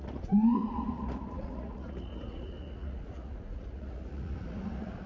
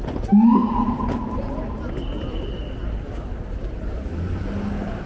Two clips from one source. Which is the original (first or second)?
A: second